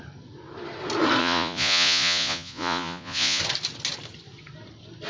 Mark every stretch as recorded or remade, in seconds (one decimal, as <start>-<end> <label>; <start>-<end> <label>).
0.0-1.2 recorded; 1.2-3.4 remade; 3.4-5.1 recorded